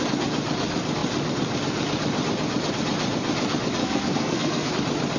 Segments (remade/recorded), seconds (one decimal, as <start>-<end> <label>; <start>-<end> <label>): 0.0-3.8 recorded; 3.8-4.7 remade; 4.7-5.2 recorded